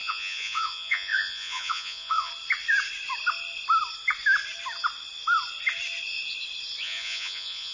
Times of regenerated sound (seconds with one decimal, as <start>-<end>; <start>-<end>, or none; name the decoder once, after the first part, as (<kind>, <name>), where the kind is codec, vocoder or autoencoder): 0.0-2.3 (vocoder, Vocos); 6.8-7.7